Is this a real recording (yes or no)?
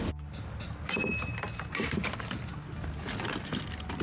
yes